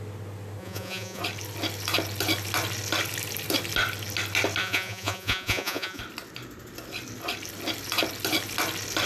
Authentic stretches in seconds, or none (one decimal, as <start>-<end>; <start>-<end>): 0.0-0.6; 1.2-4.6; 6.0-9.1